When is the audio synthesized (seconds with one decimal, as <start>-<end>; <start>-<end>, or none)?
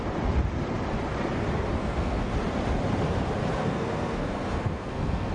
1.8-2.3; 3.6-5.3